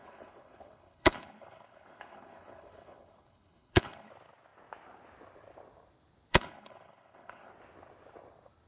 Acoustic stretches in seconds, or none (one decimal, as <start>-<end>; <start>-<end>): 4.1-6.3; 7.5-8.7

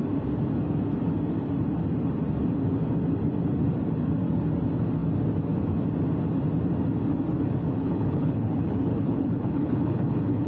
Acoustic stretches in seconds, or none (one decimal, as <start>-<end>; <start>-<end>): 0.0-7.6